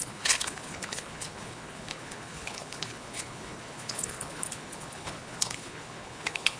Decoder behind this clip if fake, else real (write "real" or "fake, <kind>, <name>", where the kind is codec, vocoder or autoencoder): fake, codec, HILCodec